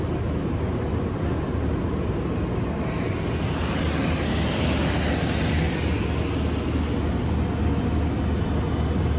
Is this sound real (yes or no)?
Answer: yes